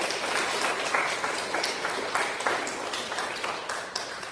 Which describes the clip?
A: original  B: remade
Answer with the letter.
A